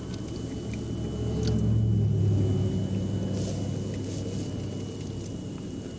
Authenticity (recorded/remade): recorded